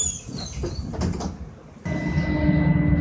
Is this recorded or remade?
recorded